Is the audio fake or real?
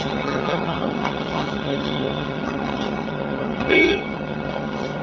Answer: fake